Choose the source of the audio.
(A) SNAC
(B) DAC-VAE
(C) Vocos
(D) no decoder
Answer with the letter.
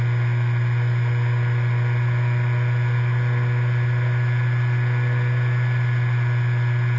D